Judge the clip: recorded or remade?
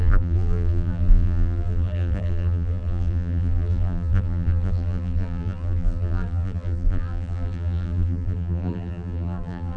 remade